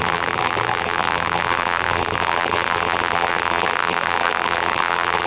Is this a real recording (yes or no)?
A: no